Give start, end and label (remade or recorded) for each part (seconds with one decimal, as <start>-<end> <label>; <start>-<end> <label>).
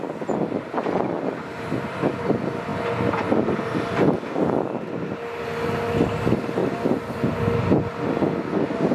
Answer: 0.0-8.9 recorded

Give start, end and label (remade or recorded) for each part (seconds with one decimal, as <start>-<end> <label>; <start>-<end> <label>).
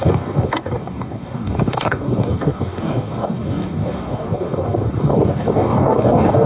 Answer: 0.0-6.5 remade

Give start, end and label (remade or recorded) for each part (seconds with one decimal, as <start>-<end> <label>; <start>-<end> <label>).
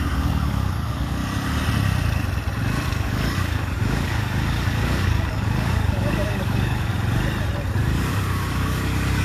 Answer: 0.0-1.2 remade; 1.2-2.9 recorded; 2.9-6.9 remade; 6.9-7.8 recorded; 7.8-9.2 remade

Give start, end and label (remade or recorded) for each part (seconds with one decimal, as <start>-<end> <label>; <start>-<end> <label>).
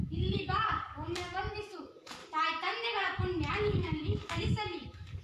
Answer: 0.0-2.2 remade; 2.2-3.5 recorded; 3.5-5.2 remade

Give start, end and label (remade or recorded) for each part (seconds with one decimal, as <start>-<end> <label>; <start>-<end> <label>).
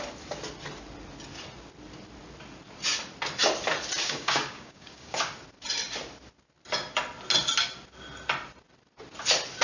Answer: 0.0-4.0 recorded; 4.0-5.2 remade; 5.2-9.6 recorded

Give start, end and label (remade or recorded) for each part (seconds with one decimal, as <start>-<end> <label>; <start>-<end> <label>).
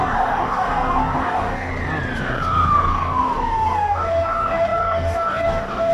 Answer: 0.0-1.7 remade; 1.7-2.2 recorded; 2.2-5.9 remade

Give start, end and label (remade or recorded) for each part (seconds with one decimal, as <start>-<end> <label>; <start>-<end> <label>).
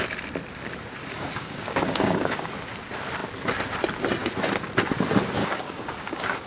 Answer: 0.0-1.0 recorded; 1.0-2.5 remade; 2.5-5.4 recorded; 5.4-6.5 remade